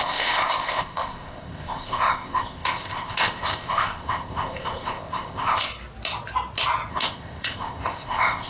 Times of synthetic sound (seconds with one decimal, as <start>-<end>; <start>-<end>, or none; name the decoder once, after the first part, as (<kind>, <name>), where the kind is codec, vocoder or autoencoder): 0.0-5.7 (codec, ZipCodec); 6.9-8.5